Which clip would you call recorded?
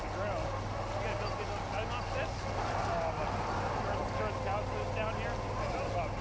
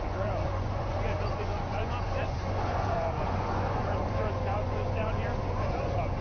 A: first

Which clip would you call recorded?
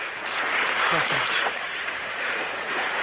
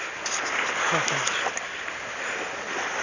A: second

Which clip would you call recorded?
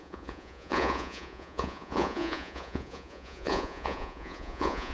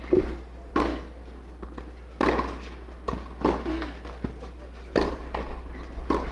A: second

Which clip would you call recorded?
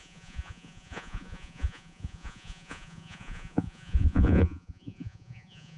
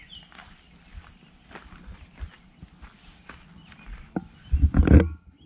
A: second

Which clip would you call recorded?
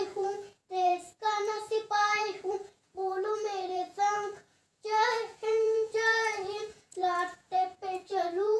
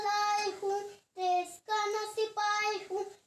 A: second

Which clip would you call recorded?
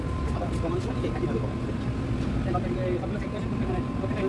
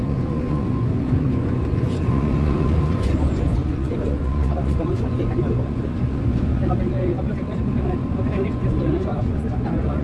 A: first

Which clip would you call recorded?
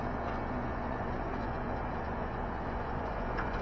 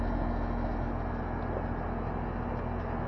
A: second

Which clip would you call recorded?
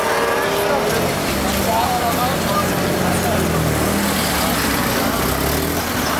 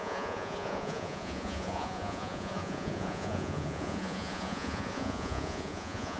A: first